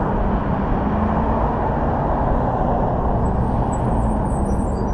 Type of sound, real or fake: real